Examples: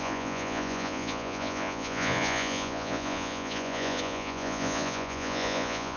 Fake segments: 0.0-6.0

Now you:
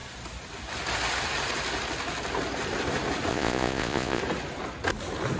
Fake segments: 3.3-4.2

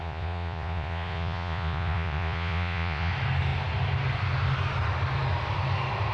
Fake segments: 0.0-3.1

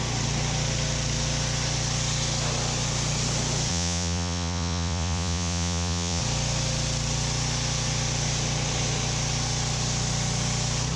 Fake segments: 3.7-6.2